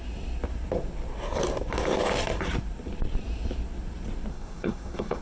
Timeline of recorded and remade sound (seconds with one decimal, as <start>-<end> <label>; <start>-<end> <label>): 0.0-4.3 recorded; 4.3-5.2 remade